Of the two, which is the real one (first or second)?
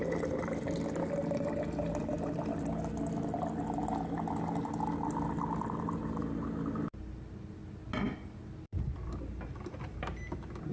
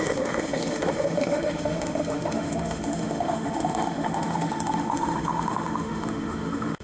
first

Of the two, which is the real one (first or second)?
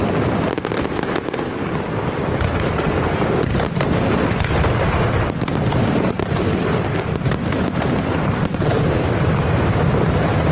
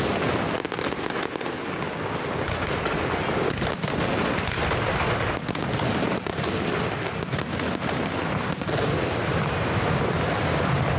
second